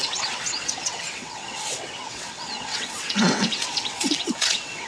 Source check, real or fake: fake